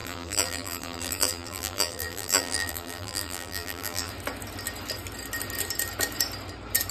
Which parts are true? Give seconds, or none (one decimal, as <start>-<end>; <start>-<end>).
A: 4.1-6.9